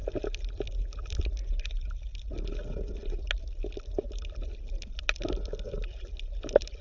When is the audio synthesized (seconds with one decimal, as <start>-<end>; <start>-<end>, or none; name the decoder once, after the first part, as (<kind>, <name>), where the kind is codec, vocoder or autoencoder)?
none